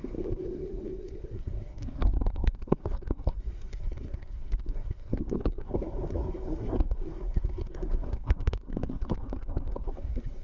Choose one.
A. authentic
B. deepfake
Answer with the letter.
B